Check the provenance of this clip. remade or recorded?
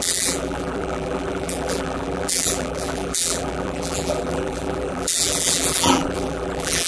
remade